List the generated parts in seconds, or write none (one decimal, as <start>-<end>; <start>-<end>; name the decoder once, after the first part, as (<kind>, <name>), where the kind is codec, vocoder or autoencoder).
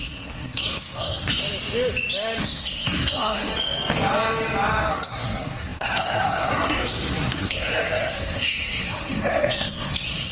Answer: 0.0-1.4 (codec, SNAC); 2.4-3.5; 4.9-10.3